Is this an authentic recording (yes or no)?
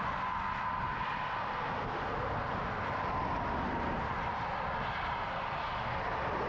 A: yes